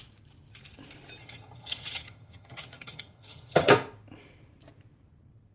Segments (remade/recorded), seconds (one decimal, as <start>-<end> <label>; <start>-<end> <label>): 0.0-1.2 recorded; 1.2-3.7 remade; 3.7-5.5 recorded